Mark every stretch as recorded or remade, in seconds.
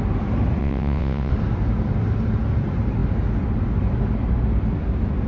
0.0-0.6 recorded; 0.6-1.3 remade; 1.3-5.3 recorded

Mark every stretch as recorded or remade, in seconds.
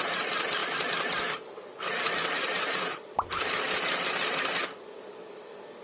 0.0-4.6 remade; 4.6-5.8 recorded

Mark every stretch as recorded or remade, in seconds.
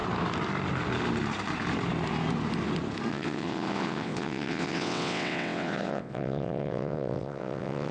0.0-3.1 recorded; 3.1-7.9 remade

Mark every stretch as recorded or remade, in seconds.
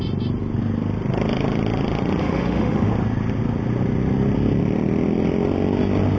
0.0-2.2 recorded; 2.2-2.9 remade; 2.9-6.2 recorded